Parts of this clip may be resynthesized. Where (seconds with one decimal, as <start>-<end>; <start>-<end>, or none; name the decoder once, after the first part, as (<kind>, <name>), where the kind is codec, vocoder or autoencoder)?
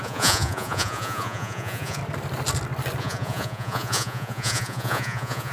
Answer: 0.0-2.0 (vocoder, Vocos); 3.0-5.5